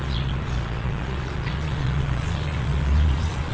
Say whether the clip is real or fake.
fake